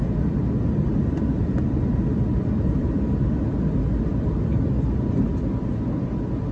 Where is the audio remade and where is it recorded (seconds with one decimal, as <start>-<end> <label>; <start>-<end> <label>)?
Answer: 0.0-6.5 recorded